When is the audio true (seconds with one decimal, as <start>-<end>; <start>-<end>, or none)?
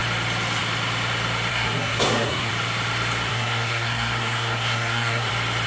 0.0-1.5; 2.5-3.3; 5.3-5.7